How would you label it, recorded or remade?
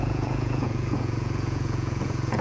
remade